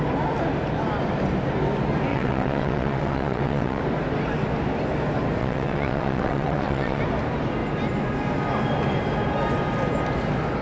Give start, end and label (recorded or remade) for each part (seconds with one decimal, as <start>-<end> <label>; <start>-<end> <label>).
0.0-2.1 recorded; 2.1-3.8 remade; 3.8-5.4 recorded; 5.4-7.0 remade; 7.0-10.6 recorded